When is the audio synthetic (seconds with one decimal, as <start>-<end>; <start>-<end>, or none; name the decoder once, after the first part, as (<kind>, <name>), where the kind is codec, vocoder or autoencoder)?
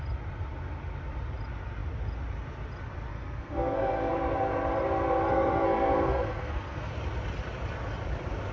3.1-4.1 (codec, SNAC); 5.3-6.9